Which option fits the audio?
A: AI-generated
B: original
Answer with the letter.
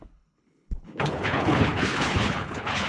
A